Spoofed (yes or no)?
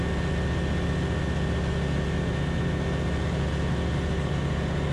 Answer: no